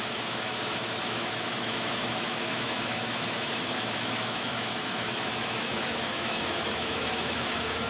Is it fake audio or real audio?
fake